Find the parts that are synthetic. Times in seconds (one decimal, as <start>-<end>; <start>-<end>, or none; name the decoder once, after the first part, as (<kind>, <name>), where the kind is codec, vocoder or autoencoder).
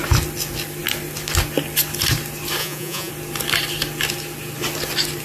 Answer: 2.6-3.1 (vocoder, Vocos)